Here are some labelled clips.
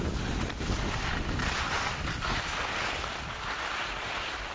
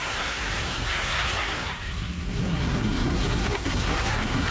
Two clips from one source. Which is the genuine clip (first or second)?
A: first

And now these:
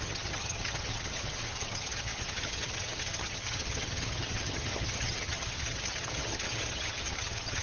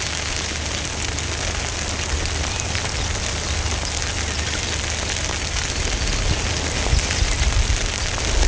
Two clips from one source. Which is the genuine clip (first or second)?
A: second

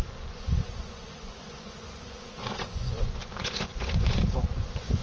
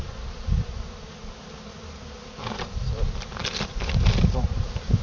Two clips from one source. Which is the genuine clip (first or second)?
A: second